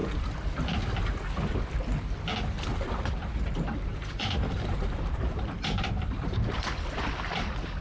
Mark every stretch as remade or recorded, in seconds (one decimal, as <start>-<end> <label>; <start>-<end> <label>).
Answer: 0.0-2.7 recorded; 2.7-6.6 remade; 6.6-7.8 recorded